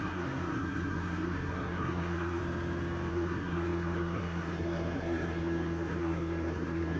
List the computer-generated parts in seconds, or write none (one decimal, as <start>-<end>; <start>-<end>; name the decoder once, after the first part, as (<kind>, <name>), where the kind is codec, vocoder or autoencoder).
0.0-2.4 (codec, SNAC); 3.1-7.0